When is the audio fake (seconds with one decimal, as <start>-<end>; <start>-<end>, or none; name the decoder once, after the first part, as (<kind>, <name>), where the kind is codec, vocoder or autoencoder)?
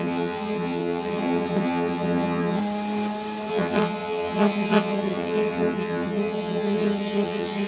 0.0-2.6 (vocoder, HiFi-GAN); 3.5-7.7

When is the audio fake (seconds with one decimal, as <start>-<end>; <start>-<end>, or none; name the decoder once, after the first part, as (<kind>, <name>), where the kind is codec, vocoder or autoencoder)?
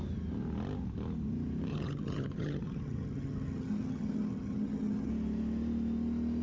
1.7-5.1 (vocoder, HiFi-GAN)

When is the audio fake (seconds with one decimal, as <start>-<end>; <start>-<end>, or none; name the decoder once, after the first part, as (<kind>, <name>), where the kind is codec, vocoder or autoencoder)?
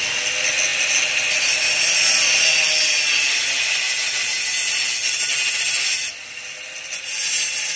none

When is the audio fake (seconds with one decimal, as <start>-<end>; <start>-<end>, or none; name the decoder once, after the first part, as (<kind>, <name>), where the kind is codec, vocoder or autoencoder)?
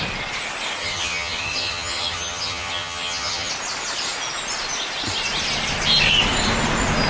0.8-3.5 (vocoder, HiFi-GAN)